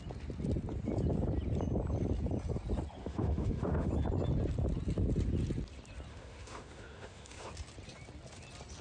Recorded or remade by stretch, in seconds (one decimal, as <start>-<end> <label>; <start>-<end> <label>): 0.0-3.0 recorded; 3.0-3.9 remade; 3.9-6.1 recorded; 6.1-7.5 remade; 7.5-8.8 recorded